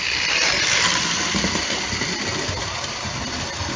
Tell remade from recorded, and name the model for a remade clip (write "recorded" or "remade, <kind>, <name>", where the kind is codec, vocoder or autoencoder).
recorded